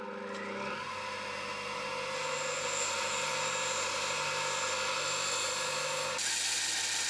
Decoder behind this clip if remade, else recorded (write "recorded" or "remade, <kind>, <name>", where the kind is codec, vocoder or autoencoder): recorded